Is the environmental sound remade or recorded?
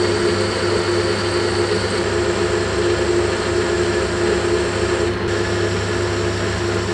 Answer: recorded